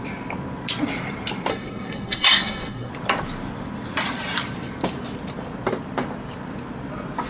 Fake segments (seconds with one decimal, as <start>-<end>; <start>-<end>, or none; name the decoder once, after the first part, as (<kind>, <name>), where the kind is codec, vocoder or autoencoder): 1.5-2.9 (codec, SNAC)